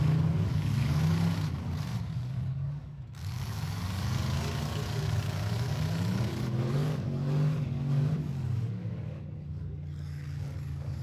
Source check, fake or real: fake